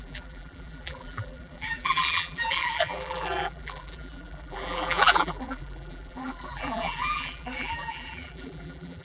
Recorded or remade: remade